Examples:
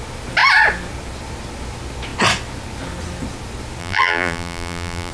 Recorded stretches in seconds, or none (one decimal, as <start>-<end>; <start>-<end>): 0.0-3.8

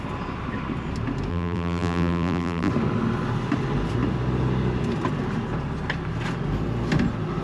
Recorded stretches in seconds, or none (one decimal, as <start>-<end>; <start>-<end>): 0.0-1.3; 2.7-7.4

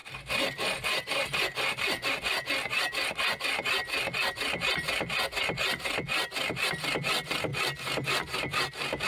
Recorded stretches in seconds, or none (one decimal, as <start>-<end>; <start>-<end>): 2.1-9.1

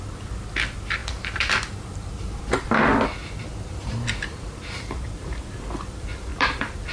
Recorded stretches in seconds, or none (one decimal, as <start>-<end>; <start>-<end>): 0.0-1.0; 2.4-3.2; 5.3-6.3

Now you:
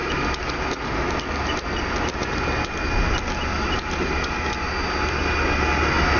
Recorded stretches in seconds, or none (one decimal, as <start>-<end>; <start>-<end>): 0.0-3.5; 4.3-6.2

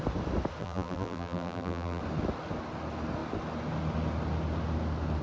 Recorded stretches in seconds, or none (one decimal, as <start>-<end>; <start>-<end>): 0.0-0.6; 2.0-5.2

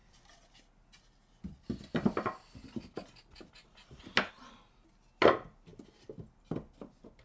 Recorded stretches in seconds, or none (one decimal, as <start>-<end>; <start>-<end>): 0.0-7.2

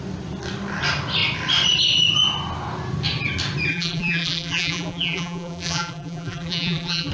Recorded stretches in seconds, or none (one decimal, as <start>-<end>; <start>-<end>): 0.0-3.7